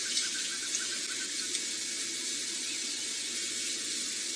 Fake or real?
real